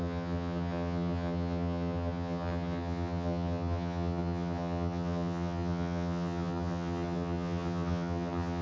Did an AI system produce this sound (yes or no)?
yes